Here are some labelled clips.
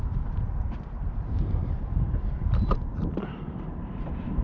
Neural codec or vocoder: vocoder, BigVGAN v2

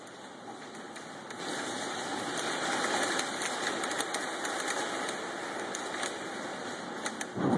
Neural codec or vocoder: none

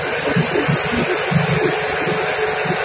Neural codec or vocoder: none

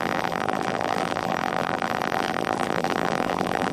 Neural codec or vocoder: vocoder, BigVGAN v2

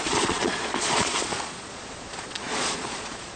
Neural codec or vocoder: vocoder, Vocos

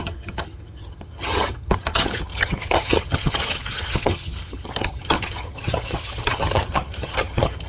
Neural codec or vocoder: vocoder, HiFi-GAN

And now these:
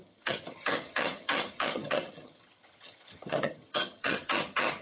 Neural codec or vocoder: vocoder, HiFi-GAN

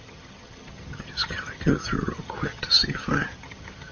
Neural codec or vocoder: vocoder, HiFi-GAN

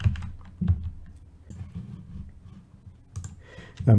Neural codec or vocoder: none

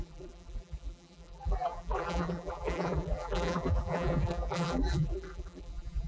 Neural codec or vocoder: vocoder, BigVGAN v2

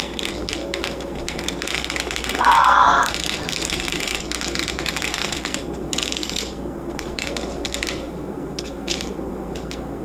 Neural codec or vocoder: codec, SNAC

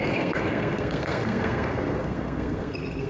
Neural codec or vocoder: codec, SNAC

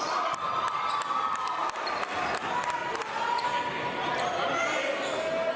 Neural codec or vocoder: none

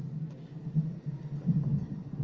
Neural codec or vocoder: none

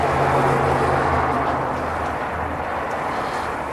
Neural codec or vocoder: none